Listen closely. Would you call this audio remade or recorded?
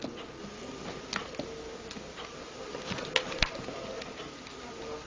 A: recorded